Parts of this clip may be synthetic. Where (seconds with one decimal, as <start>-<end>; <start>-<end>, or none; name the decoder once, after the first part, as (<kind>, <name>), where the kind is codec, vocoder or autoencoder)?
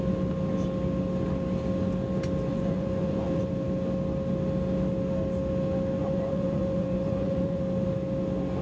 2.5-3.5 (vocoder, Vocos); 6.0-7.6